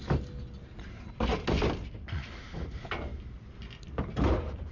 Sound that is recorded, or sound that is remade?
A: recorded